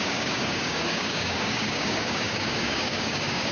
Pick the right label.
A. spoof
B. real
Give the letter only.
A